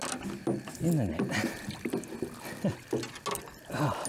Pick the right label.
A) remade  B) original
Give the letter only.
B